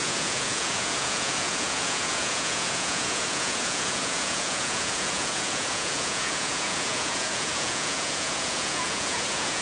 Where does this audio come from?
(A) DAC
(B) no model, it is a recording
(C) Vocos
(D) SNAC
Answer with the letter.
C